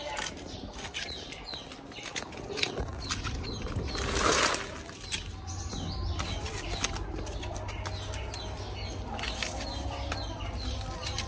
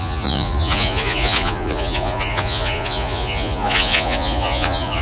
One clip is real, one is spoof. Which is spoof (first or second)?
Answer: second